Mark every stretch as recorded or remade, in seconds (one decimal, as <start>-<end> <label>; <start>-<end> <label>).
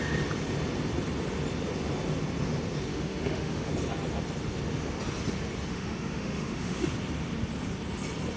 0.0-2.9 recorded; 2.9-3.7 remade; 3.7-5.7 recorded; 5.7-6.9 remade; 6.9-8.4 recorded